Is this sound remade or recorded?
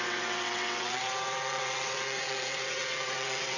remade